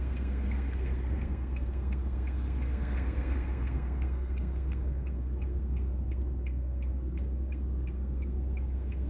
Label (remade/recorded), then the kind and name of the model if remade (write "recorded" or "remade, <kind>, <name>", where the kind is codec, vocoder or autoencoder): remade, codec, SNAC